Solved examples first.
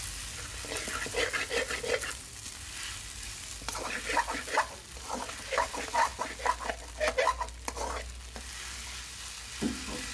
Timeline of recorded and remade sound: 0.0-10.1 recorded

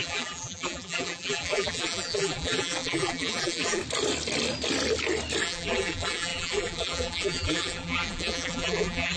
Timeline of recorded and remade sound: 0.0-3.8 remade; 3.8-5.4 recorded; 5.4-9.2 remade